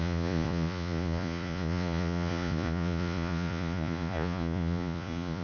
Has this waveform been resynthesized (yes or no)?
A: yes